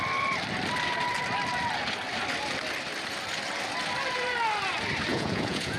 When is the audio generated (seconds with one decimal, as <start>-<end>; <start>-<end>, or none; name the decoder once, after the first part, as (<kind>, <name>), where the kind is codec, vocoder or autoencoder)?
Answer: 5.1-5.8 (vocoder, Vocos)